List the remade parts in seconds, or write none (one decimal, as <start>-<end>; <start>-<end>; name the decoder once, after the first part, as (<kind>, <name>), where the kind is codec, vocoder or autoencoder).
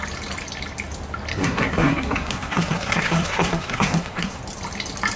1.3-4.4 (codec, SNAC)